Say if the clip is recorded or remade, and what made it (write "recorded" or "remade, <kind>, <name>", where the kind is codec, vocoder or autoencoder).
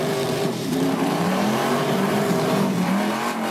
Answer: remade, vocoder, BigVGAN v2